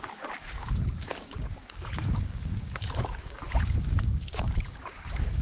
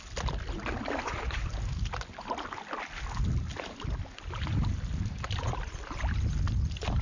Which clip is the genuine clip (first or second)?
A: second